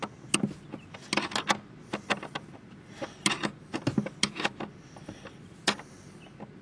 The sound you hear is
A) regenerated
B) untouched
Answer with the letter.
B